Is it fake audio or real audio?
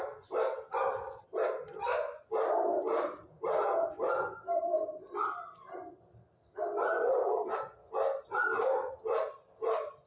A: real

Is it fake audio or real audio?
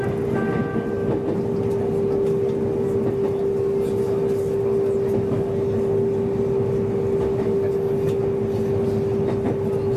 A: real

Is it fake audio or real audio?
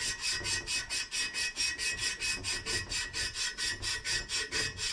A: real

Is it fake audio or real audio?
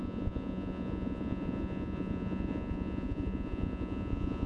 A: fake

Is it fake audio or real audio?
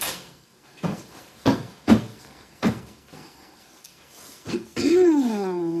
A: fake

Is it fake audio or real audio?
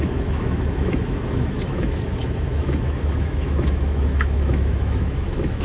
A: fake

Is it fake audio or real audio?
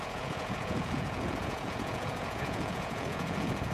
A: fake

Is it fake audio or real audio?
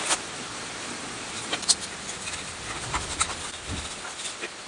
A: real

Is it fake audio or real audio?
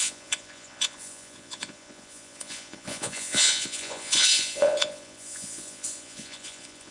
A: fake